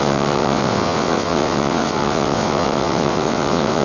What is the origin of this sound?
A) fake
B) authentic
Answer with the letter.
A